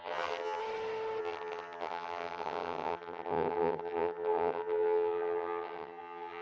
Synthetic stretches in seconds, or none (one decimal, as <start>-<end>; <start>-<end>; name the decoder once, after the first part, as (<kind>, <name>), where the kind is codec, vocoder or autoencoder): 0.0-0.6 (vocoder, HiFi-GAN); 1.2-6.4